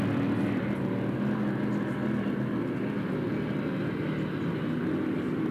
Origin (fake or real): real